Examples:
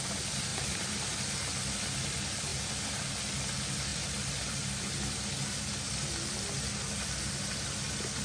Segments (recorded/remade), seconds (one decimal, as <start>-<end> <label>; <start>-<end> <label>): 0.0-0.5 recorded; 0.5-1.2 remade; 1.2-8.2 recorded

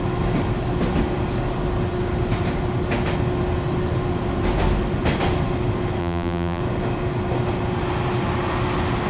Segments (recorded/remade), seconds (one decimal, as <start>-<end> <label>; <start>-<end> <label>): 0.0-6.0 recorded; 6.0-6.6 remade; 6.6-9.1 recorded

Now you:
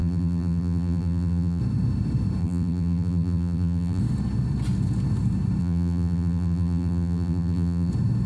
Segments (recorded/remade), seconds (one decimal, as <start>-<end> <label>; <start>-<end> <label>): 0.0-1.6 remade; 1.6-2.4 recorded; 2.4-4.0 remade; 4.0-5.6 recorded; 5.6-7.9 remade; 7.9-8.3 recorded

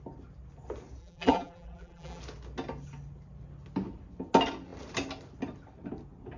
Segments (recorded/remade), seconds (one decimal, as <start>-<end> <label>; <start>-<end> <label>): 0.0-1.0 recorded; 1.0-2.2 remade; 2.2-6.4 recorded

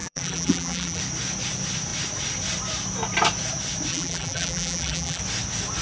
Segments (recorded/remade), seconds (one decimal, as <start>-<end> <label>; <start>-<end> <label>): 0.0-1.0 remade; 1.0-3.9 recorded; 3.9-5.2 remade; 5.2-5.8 recorded